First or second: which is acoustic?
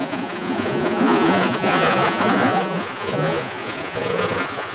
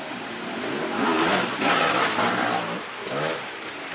second